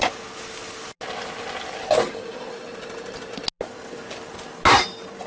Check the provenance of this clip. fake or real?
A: real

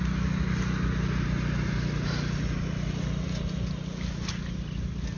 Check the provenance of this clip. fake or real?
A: real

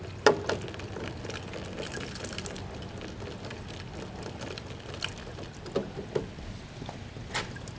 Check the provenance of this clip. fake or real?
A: real